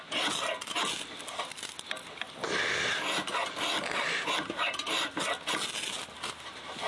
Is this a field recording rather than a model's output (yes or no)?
yes